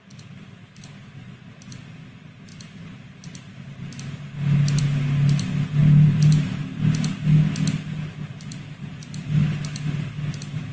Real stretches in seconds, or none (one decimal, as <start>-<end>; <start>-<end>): 0.0-5.8; 6.6-10.7